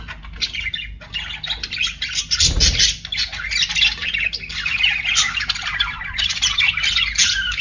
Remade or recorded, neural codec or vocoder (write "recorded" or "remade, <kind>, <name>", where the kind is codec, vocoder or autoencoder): recorded